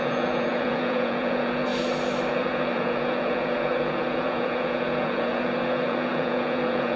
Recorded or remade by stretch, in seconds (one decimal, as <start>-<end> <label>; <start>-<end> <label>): 0.0-1.7 remade; 1.7-2.3 recorded; 2.3-7.0 remade